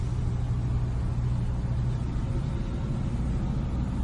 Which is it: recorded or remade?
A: recorded